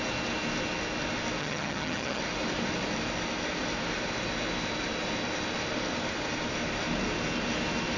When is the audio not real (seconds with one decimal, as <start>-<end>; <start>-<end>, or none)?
1.4-2.2